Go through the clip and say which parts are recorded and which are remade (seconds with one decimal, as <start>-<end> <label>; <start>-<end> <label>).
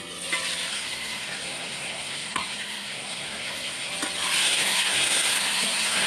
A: 0.0-0.7 recorded; 0.7-3.9 remade; 3.9-4.4 recorded; 4.4-6.1 remade